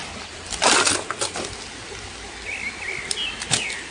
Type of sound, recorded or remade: recorded